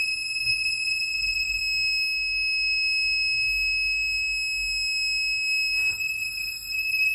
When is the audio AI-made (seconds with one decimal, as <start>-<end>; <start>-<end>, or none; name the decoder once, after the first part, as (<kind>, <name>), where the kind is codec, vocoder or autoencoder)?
0.0-1.6 (vocoder, BigVGAN v2); 5.9-7.1